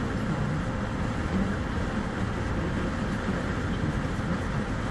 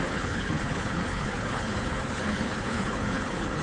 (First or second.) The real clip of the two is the first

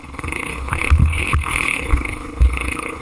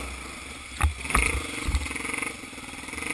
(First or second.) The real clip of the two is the second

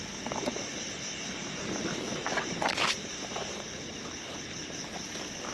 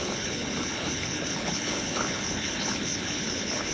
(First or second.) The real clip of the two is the first